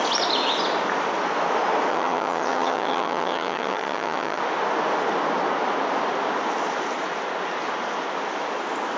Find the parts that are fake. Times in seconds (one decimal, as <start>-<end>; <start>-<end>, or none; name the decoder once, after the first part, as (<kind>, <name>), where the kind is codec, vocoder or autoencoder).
1.9-4.4 (vocoder, HiFi-GAN)